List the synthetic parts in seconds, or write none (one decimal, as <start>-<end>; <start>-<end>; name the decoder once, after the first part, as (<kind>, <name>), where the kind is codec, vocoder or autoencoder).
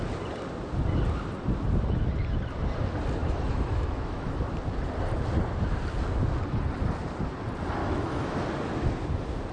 3.2-4.4 (autoencoder, DAC-VAE); 7.8-8.4